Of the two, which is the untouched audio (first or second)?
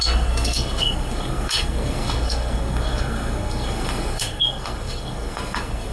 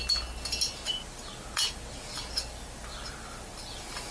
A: second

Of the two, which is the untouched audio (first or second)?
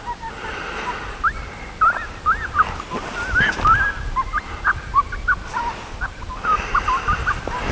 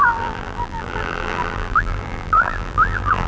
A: first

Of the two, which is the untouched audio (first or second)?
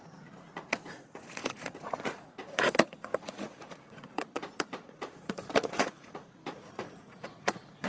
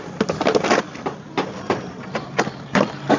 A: second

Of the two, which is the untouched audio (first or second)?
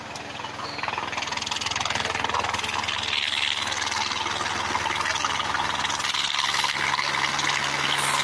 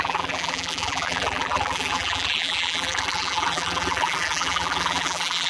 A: first